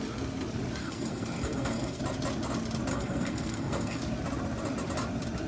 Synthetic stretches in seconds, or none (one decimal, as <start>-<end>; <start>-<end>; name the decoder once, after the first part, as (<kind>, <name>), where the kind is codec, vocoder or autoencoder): 0.8-2.0 (codec, SNAC); 2.9-4.0

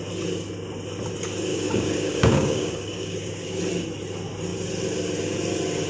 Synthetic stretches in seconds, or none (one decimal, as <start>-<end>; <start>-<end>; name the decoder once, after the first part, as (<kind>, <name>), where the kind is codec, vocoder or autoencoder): 1.5-3.6 (codec, DAC)